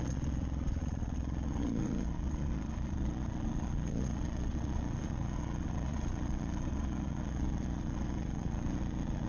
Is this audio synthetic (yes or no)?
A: yes